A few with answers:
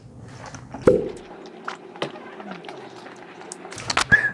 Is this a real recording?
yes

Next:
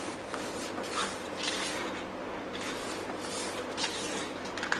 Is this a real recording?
yes